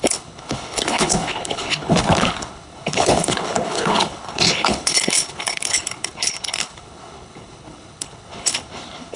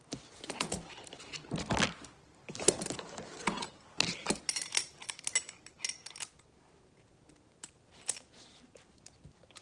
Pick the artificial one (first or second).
first